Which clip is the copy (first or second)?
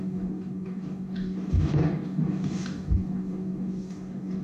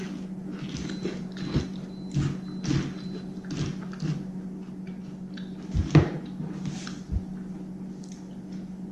first